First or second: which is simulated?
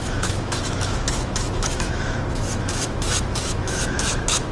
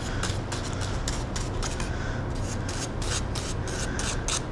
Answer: first